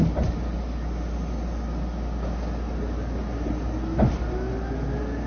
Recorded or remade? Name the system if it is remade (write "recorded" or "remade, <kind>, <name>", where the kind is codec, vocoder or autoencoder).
recorded